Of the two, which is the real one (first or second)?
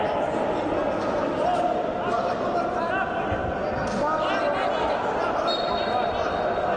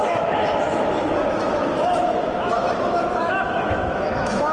first